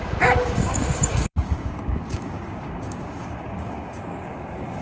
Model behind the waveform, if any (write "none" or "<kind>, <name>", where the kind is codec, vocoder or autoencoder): codec, DAC